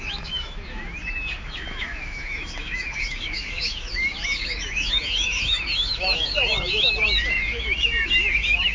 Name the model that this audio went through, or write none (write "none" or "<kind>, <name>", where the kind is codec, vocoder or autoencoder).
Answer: autoencoder, DAC-VAE